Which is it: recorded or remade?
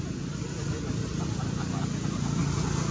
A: recorded